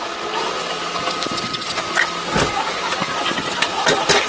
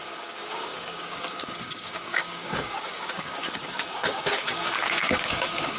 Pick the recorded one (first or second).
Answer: first